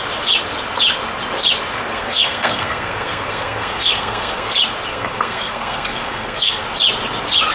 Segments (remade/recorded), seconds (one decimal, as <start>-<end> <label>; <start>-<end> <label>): 0.0-1.9 recorded; 1.9-4.5 remade; 4.5-4.9 recorded; 4.9-6.6 remade; 6.6-7.5 recorded